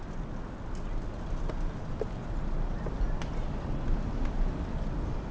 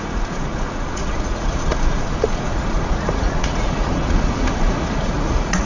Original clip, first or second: first